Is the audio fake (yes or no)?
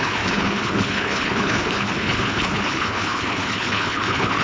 yes